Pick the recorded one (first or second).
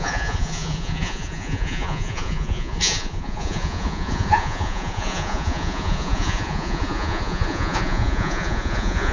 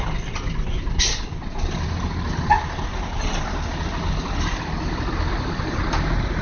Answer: second